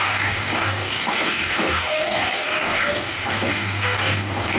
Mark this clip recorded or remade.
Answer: remade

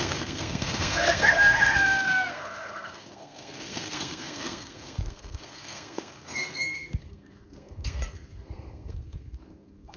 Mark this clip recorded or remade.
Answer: remade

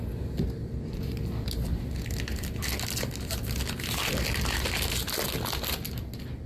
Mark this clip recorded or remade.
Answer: recorded